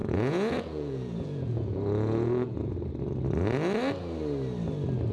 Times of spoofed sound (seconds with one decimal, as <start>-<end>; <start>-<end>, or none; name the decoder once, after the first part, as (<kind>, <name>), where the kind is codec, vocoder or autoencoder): 0.0-2.7 (vocoder, Vocos)